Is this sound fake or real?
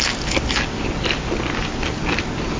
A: real